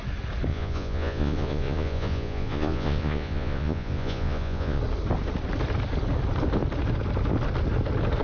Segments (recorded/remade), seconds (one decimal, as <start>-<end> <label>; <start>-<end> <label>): 0.0-0.5 recorded; 0.5-4.8 remade; 4.8-8.2 recorded